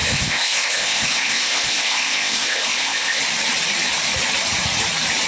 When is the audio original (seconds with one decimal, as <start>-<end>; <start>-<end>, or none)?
3.2-5.3